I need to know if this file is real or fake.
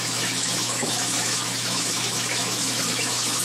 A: fake